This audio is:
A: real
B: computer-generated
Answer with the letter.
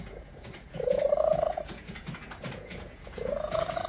B